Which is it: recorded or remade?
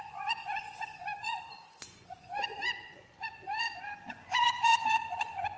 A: remade